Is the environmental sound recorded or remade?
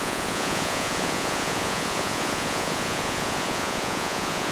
remade